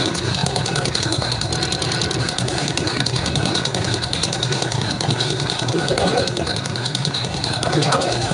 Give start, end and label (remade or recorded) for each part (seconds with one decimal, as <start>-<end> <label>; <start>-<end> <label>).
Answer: 0.0-1.5 remade; 1.5-2.2 recorded; 2.2-8.3 remade